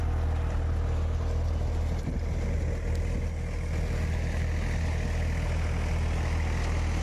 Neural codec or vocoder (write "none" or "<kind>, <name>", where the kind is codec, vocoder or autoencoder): none